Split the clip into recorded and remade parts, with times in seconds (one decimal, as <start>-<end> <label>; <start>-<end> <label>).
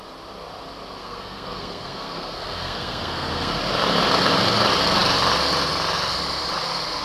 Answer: 0.0-1.0 recorded; 1.0-3.6 remade; 3.6-7.0 recorded